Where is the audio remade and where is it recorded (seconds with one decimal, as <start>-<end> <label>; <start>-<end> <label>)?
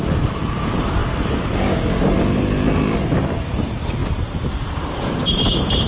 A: 0.0-1.0 remade; 1.0-3.5 recorded; 3.5-5.9 remade